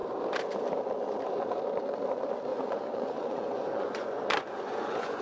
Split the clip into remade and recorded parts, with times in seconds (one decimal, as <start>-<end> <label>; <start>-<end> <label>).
0.0-2.5 recorded; 2.5-5.2 remade